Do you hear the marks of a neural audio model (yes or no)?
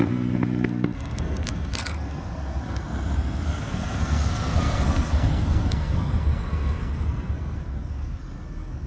yes